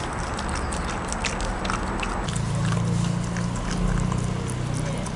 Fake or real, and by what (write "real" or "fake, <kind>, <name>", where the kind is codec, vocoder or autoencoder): real